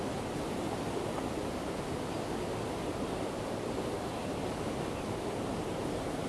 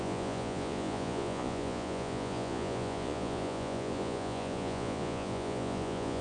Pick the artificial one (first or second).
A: second